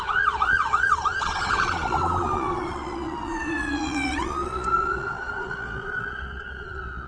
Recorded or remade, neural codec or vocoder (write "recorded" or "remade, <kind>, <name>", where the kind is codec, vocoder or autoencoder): remade, vocoder, Vocos